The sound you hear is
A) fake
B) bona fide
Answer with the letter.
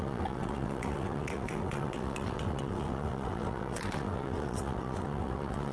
A